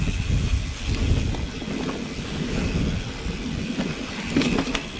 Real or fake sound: real